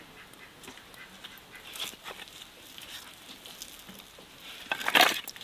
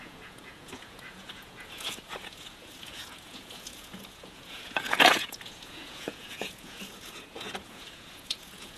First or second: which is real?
first